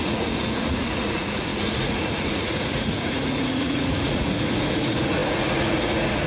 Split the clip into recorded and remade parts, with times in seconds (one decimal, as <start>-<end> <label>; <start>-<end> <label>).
0.0-6.3 remade